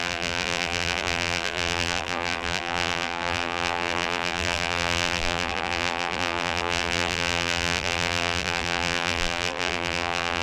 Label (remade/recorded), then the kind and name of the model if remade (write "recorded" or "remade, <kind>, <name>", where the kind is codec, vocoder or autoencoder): remade, vocoder, BigVGAN v2